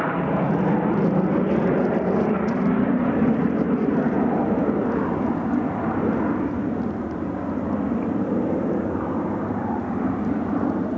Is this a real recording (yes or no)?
yes